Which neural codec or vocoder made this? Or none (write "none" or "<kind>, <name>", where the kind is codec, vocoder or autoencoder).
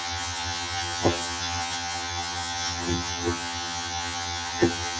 vocoder, HiFi-GAN